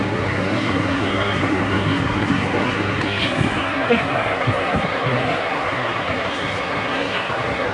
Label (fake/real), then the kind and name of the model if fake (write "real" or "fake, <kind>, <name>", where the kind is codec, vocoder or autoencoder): fake, codec, SNAC